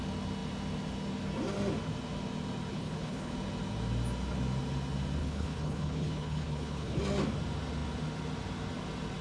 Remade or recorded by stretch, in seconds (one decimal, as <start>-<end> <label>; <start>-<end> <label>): 0.0-2.7 recorded; 2.7-3.3 remade; 3.3-5.2 recorded; 5.2-7.0 remade; 7.0-9.2 recorded